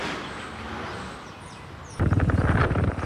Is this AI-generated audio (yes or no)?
yes